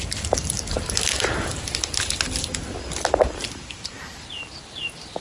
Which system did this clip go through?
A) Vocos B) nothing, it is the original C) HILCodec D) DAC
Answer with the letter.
B